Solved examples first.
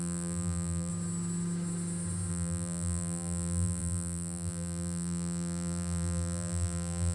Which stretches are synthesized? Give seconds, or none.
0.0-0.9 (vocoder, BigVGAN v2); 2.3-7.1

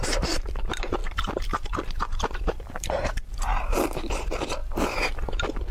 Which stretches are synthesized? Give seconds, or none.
0.0-4.6 (vocoder, BigVGAN v2); 5.3-5.7

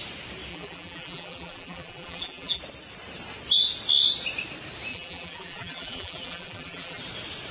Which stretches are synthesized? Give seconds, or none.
0.5-2.6 (vocoder, BigVGAN v2); 4.9-7.0

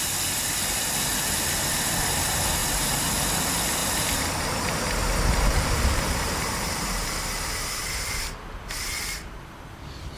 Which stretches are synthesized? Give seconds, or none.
2.6-3.1 (vocoder, BigVGAN v2); 3.8-7.8

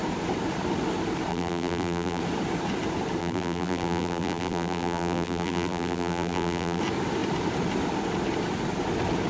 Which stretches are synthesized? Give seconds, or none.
1.3-2.2 (vocoder, BigVGAN v2); 3.2-6.8